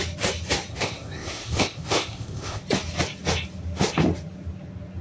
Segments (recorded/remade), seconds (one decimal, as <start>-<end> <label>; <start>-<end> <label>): 0.0-0.7 recorded; 0.7-2.6 remade; 2.6-5.0 recorded